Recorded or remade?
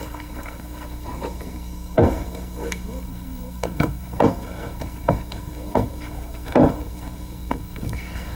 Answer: remade